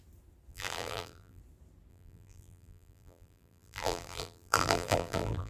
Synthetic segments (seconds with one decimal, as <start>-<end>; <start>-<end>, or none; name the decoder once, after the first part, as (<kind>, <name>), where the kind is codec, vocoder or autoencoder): 0.5-1.4 (vocoder, BigVGAN v2); 1.9-5.5